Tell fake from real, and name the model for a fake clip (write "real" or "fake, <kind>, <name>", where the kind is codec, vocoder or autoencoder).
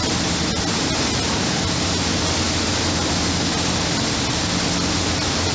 real